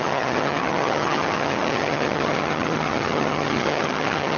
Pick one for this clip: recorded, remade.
remade